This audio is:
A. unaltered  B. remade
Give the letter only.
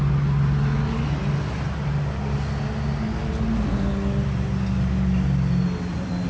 A